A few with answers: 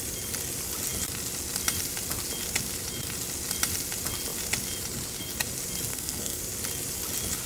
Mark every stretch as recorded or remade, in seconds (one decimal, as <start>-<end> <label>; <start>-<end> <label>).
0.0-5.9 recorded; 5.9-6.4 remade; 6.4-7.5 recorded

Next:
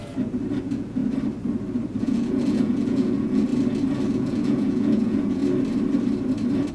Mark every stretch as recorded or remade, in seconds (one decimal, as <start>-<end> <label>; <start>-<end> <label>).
0.0-0.6 recorded; 0.6-1.0 remade; 1.0-2.0 recorded; 2.0-3.5 remade; 3.5-4.1 recorded; 4.1-5.4 remade; 5.4-6.7 recorded

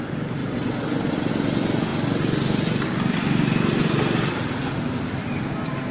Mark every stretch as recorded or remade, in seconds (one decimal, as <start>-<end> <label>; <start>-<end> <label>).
0.0-5.9 recorded

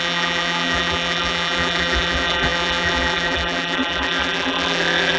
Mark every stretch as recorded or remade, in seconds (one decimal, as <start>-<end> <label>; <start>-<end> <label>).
0.0-5.2 remade